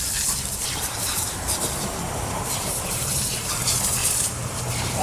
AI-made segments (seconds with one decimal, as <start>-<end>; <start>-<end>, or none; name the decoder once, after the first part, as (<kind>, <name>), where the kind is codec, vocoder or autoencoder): 0.6-3.6 (vocoder, BigVGAN v2); 4.0-4.6